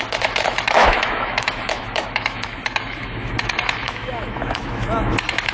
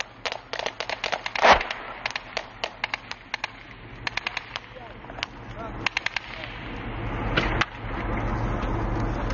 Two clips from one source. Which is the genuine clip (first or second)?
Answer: second